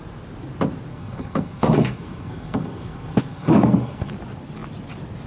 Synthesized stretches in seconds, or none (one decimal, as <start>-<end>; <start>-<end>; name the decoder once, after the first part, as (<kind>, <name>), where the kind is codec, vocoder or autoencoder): 0.9-4.1 (codec, SNAC)